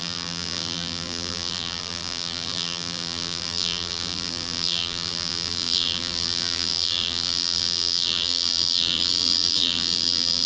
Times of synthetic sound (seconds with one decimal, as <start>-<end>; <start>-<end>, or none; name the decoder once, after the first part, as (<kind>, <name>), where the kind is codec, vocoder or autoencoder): 0.0-10.5 (vocoder, BigVGAN v2)